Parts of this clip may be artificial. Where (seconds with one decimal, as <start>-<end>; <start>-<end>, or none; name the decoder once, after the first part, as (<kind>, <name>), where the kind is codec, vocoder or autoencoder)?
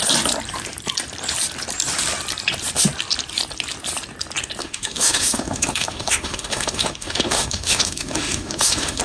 4.6-9.0 (autoencoder, DAC-VAE)